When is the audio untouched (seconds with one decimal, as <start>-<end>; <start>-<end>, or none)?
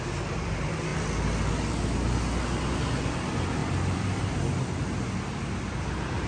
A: 0.0-3.6; 5.5-6.3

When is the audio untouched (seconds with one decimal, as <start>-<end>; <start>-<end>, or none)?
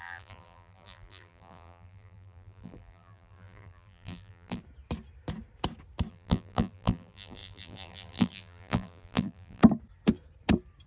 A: 4.6-6.1; 9.6-10.9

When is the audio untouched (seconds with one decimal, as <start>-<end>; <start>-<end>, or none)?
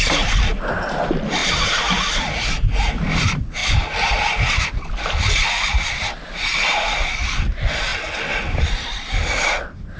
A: 0.0-10.0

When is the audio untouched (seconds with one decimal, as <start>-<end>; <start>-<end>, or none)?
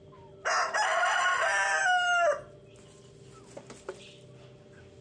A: 0.0-5.0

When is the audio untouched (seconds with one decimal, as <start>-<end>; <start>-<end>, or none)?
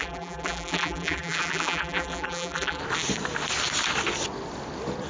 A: 2.8-5.1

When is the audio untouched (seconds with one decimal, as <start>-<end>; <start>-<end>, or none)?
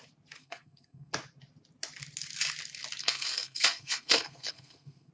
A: 0.0-0.4; 1.1-3.0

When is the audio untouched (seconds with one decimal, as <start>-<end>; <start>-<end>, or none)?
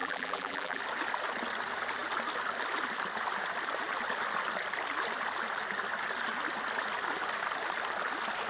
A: 0.8-8.5